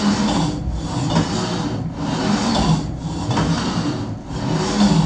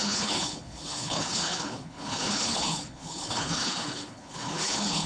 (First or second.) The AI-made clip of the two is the second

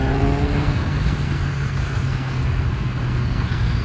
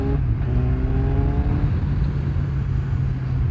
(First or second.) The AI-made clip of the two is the first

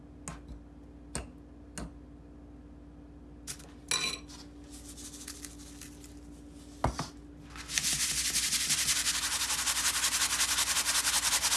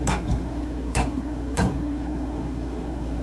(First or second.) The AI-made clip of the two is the second